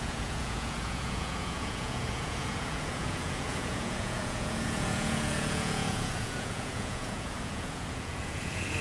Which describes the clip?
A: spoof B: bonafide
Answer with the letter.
A